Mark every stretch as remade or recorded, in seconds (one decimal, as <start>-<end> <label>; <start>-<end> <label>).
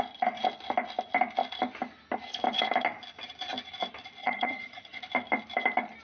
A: 0.0-4.2 recorded; 4.2-5.0 remade; 5.0-6.0 recorded